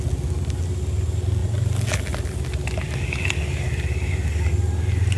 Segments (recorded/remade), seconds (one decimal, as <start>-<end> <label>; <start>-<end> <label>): 0.0-5.2 recorded